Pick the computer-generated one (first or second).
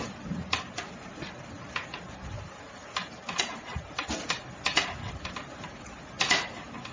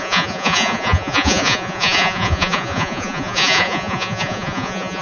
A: second